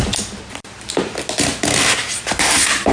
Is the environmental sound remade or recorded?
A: recorded